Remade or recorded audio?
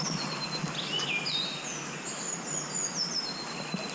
recorded